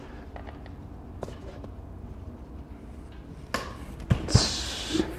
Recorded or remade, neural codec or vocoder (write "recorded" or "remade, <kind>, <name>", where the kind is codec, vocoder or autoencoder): recorded